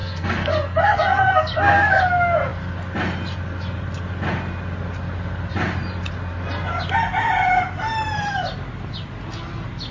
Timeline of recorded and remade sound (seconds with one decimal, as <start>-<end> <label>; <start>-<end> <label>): 0.0-2.0 remade; 2.0-9.9 recorded